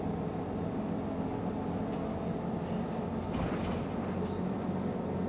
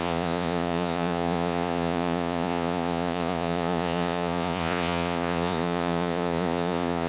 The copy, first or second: second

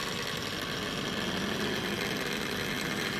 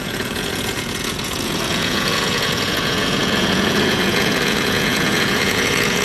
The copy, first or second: second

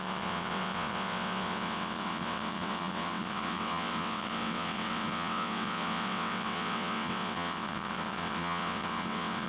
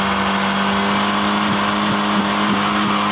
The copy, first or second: first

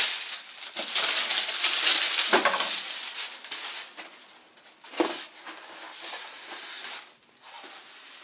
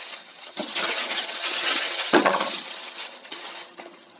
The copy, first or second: second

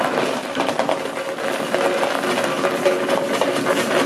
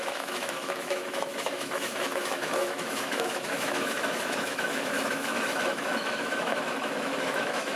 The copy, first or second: second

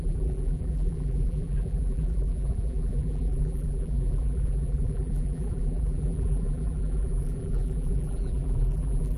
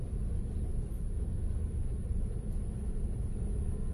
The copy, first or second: first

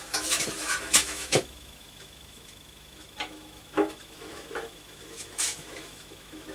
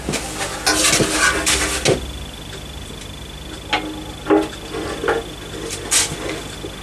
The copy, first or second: first